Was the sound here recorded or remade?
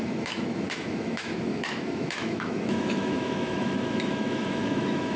remade